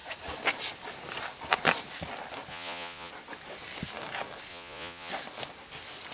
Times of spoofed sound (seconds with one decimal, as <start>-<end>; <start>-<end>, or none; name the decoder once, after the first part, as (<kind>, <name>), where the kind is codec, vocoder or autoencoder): 2.5-3.1 (vocoder, Vocos); 4.5-5.1